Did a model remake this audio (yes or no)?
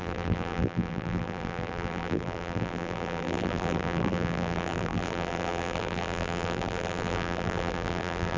yes